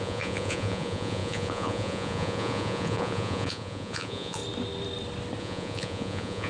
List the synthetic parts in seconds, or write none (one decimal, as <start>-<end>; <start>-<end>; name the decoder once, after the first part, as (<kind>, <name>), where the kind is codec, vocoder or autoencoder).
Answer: 0.0-4.4 (vocoder, Vocos); 5.4-6.5